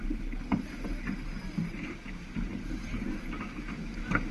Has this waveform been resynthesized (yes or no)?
no